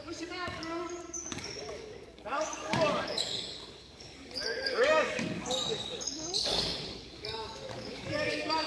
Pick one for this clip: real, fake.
fake